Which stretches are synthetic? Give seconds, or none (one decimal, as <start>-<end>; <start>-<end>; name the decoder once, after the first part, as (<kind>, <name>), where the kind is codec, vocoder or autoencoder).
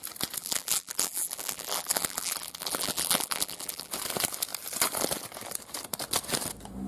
0.4-3.9 (vocoder, BigVGAN v2)